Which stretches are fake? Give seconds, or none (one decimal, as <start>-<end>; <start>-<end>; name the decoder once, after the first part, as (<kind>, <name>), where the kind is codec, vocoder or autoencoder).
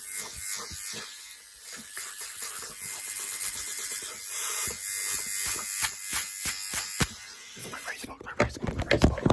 7.6-8.1 (vocoder, WaveNeXt)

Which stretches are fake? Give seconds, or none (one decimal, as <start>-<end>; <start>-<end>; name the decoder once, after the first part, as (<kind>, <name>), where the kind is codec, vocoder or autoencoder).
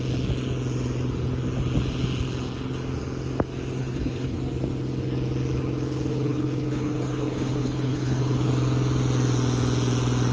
3.8-4.4 (codec, HILCodec); 6.1-8.5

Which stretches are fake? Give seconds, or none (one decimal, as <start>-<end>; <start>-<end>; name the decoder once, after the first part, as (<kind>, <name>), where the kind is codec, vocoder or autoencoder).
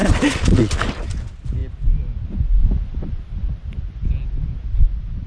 0.0-0.6 (vocoder, Vocos)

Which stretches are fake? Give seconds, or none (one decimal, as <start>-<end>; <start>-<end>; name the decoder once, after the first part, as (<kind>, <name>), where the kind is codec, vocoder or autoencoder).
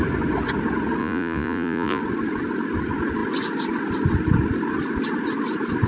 1.0-2.0 (vocoder, Vocos)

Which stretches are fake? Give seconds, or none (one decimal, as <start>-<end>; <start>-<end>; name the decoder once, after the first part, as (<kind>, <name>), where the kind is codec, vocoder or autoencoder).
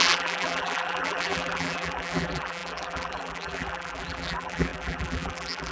0.0-5.7 (vocoder, BigVGAN v2)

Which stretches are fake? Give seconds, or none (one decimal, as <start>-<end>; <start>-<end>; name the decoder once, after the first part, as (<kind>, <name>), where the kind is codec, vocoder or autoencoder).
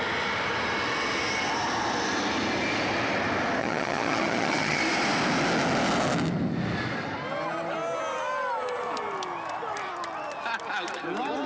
3.6-4.8 (vocoder, HiFi-GAN)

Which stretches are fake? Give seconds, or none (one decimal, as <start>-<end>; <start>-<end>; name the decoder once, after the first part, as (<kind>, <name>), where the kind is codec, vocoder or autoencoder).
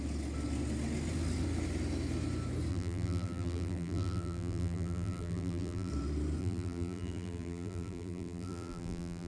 2.7-5.9 (vocoder, BigVGAN v2); 6.4-9.3